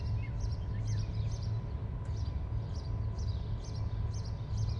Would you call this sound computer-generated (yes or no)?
no